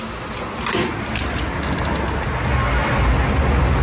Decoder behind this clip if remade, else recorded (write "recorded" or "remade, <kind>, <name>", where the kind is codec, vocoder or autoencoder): recorded